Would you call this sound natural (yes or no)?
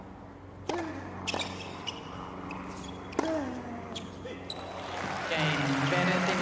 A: yes